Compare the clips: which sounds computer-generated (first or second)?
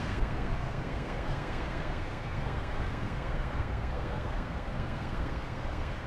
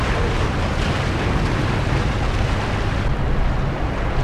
first